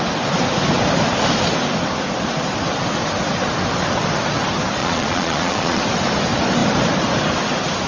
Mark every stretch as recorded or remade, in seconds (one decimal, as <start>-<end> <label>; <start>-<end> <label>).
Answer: 0.0-4.8 recorded; 4.8-5.8 remade; 5.8-7.9 recorded

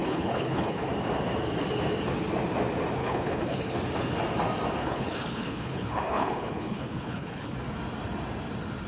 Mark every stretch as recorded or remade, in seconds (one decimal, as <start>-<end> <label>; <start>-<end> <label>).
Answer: 0.0-0.9 remade; 0.9-3.0 recorded; 3.0-3.7 remade; 3.7-4.8 recorded; 4.8-7.5 remade; 7.5-8.9 recorded

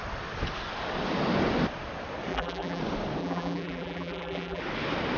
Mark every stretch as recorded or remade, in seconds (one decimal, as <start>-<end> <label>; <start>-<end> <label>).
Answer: 0.0-2.3 recorded; 2.3-2.8 remade; 2.8-3.2 recorded; 3.2-4.6 remade; 4.6-5.2 recorded

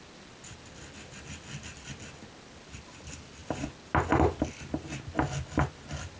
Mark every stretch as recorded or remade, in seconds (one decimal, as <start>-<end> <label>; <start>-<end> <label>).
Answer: 0.0-6.2 recorded

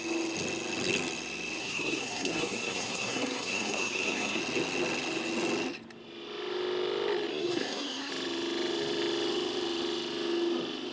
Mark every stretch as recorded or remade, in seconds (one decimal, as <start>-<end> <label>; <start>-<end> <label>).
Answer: 0.0-1.6 recorded; 1.6-4.4 remade; 4.4-7.3 recorded; 7.3-8.1 remade; 8.1-10.9 recorded